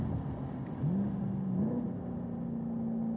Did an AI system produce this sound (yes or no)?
no